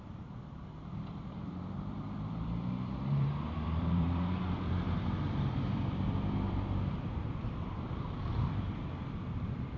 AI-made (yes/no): yes